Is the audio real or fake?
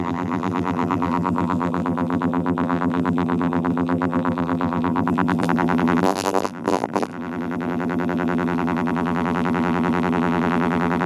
fake